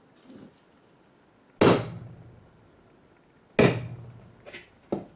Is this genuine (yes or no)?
yes